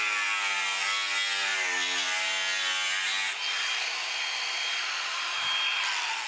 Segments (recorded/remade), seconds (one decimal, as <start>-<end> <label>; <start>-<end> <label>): 0.0-6.3 recorded